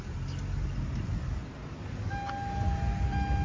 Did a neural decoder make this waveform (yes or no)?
no